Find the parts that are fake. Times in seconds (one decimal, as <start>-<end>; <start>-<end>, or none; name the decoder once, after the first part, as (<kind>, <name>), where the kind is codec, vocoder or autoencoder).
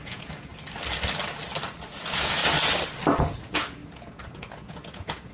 0.0-0.5 (vocoder, Vocos); 1.8-2.4; 3.2-5.3